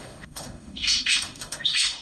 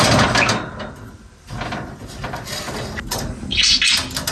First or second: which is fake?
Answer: first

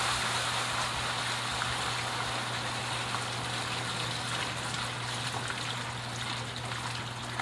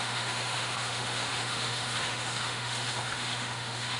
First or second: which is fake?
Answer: second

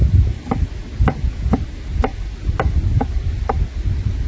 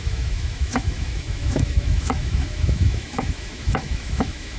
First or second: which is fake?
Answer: second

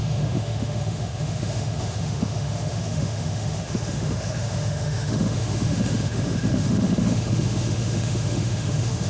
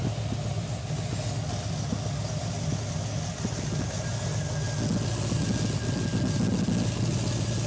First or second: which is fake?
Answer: first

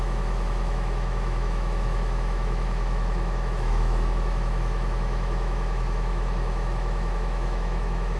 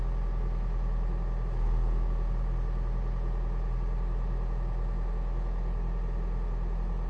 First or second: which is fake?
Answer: first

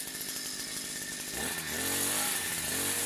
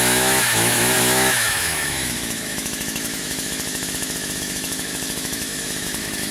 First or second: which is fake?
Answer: second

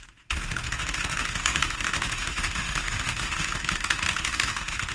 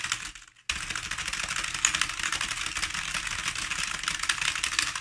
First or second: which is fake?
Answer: first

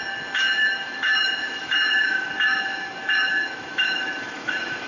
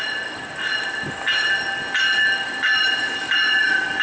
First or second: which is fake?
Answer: first